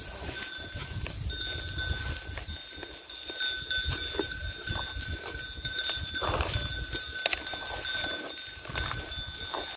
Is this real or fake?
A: real